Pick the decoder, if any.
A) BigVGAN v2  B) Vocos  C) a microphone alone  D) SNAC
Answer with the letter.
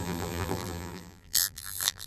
A